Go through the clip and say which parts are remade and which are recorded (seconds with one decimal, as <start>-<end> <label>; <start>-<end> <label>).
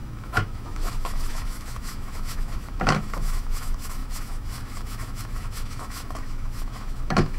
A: 0.0-7.4 remade